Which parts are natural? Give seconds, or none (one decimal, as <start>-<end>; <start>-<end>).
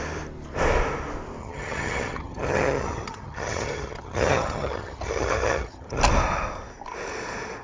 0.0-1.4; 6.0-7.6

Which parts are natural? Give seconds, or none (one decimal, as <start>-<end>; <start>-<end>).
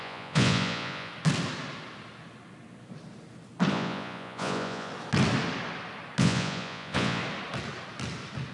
1.1-3.7; 4.9-6.2; 7.2-8.5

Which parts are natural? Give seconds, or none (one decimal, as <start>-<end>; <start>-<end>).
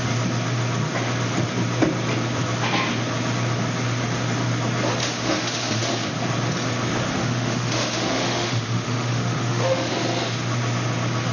0.0-5.0; 5.9-7.2; 9.9-11.3